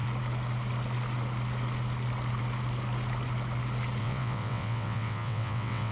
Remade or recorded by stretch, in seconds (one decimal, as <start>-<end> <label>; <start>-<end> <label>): 0.0-4.0 recorded; 4.0-5.9 remade